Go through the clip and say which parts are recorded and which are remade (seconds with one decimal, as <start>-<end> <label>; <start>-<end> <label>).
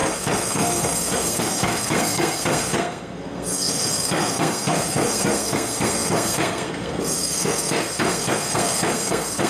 0.0-9.5 remade